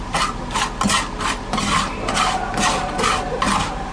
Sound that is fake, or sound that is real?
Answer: real